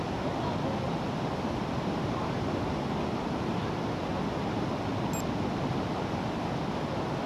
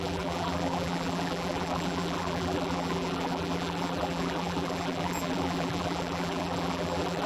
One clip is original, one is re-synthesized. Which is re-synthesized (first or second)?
second